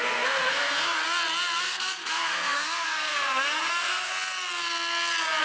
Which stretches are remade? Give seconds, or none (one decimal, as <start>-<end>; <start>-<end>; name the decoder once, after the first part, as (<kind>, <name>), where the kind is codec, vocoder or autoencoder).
0.0-1.0 (codec, SNAC); 1.6-4.1